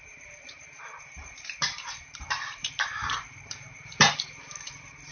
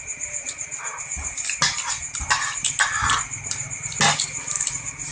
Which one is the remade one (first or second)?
first